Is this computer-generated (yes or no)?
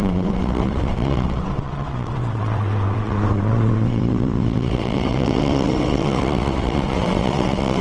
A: yes